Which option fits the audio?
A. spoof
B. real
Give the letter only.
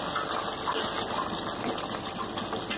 B